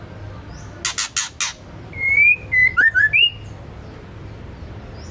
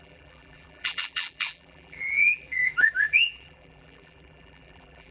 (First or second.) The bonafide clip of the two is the first